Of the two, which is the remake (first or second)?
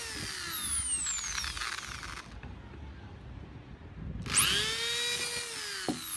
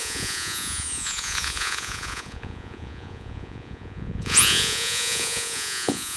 second